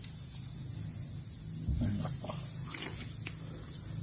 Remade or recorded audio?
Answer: recorded